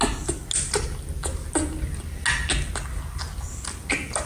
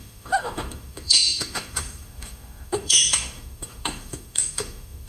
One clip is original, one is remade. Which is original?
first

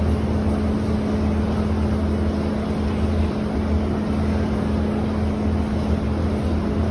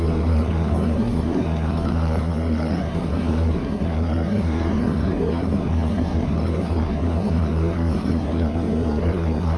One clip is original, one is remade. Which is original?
first